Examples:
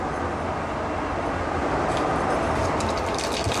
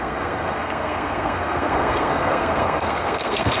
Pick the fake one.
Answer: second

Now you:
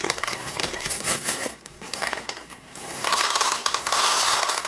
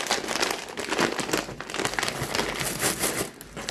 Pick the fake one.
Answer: first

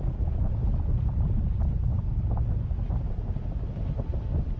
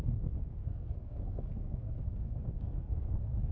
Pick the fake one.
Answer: second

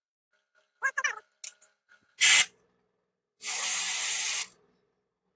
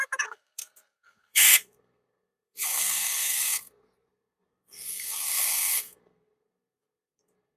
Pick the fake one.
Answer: second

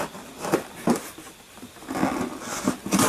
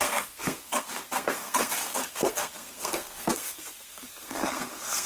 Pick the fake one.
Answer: second